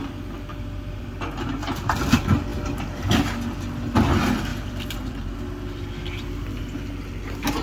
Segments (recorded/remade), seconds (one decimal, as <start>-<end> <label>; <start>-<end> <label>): 0.0-0.5 recorded; 0.5-1.0 remade; 1.0-4.5 recorded; 4.5-6.6 remade; 6.6-7.6 recorded